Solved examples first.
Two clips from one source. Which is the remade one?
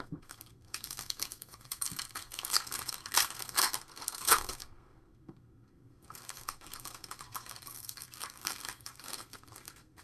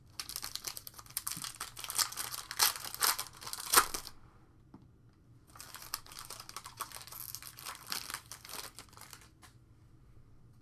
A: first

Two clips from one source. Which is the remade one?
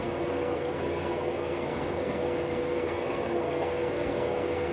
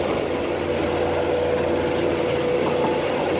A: first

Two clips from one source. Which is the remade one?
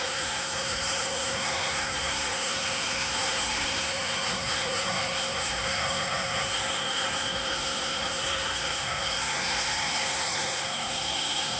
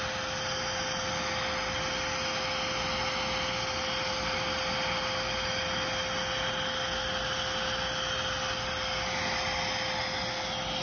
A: first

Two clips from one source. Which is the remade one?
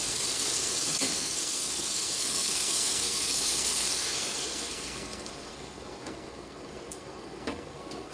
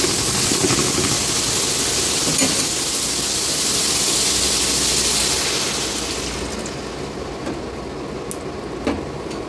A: first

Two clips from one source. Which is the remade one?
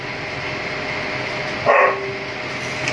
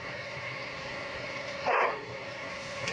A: second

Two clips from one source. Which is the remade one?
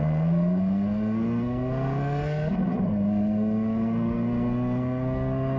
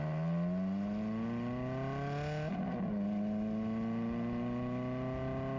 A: first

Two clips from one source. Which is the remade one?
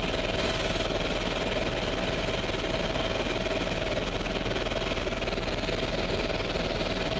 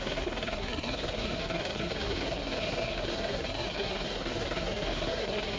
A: second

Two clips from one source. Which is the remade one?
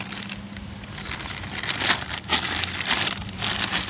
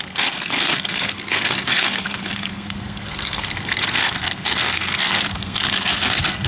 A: second